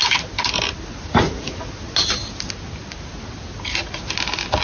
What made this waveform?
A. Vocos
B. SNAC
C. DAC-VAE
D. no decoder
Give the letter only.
D